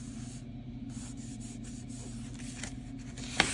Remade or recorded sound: recorded